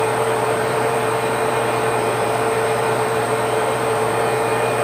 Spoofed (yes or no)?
yes